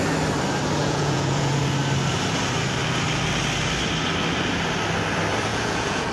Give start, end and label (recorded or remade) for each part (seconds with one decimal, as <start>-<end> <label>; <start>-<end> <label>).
0.0-0.8 recorded; 0.8-1.6 remade; 1.6-5.5 recorded; 5.5-6.1 remade